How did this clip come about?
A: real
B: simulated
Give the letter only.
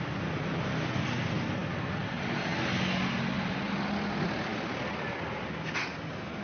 A